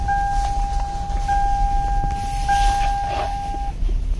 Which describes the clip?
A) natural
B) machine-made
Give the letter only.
A